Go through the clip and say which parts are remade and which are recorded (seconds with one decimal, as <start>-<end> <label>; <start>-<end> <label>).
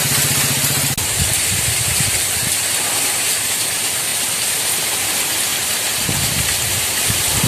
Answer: 0.0-7.5 recorded